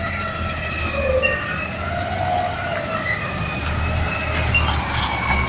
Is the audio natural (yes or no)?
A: yes